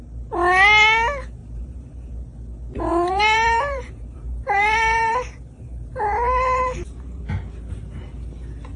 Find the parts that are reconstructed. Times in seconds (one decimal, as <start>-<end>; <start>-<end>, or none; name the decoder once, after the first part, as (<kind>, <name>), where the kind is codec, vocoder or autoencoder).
1.4-2.1 (vocoder, BigVGAN v2); 2.9-7.2